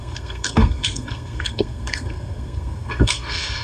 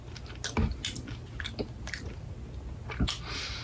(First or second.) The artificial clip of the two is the first